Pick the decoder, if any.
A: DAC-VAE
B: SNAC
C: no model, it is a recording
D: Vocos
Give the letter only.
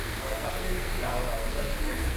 B